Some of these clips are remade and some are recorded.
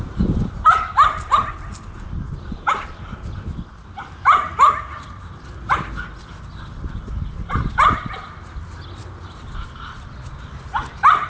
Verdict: recorded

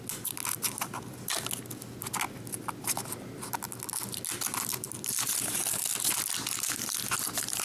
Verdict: recorded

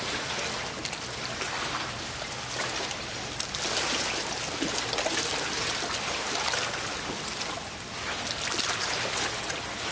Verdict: recorded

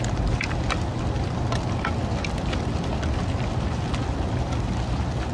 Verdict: recorded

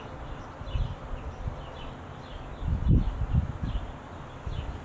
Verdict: recorded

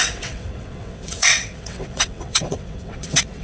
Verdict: remade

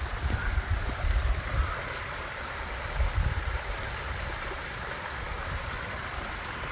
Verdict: remade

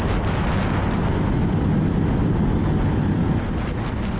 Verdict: recorded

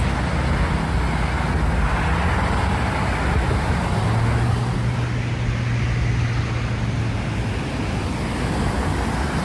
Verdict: recorded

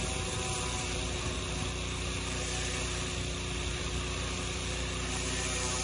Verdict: recorded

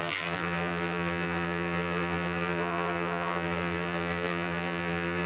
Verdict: remade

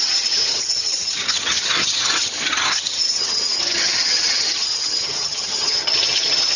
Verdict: remade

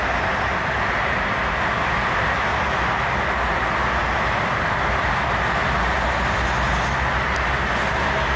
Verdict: recorded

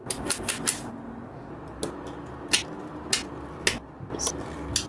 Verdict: recorded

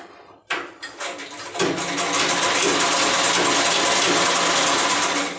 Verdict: recorded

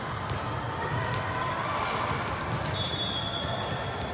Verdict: recorded